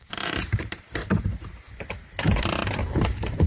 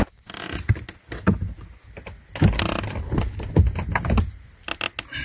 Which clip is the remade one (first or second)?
first